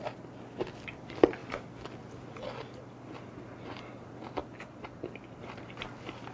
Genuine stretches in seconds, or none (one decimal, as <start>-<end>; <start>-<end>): 0.0-6.3